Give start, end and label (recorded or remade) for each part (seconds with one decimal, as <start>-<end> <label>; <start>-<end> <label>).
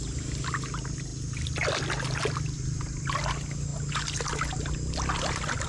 0.0-5.7 recorded